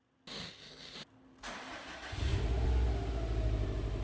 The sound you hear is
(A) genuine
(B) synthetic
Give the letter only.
A